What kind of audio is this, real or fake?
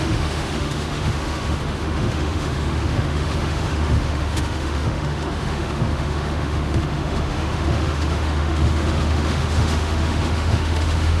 fake